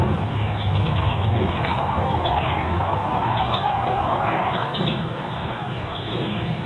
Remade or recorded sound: remade